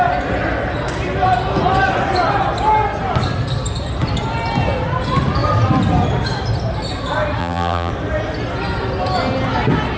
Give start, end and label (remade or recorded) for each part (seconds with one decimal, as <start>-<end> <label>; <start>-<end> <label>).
0.0-7.4 recorded; 7.4-7.9 remade; 7.9-10.0 recorded